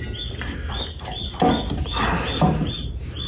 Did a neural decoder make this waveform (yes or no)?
no